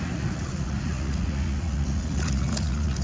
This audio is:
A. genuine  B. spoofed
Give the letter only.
B